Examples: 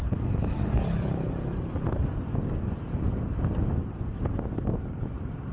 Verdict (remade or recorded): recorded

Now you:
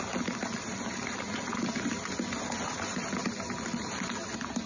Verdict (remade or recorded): recorded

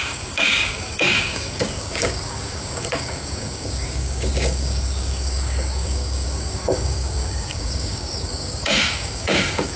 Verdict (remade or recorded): remade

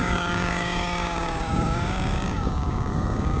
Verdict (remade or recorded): remade